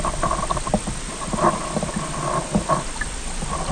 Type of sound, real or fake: real